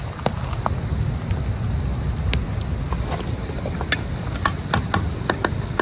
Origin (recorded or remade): recorded